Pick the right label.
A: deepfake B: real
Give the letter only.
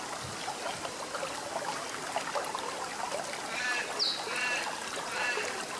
B